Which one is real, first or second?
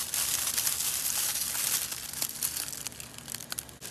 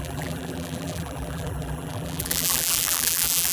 first